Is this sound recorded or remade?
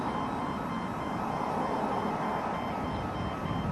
recorded